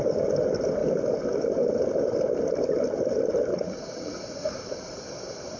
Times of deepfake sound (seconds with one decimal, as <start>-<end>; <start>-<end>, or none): 3.5-5.0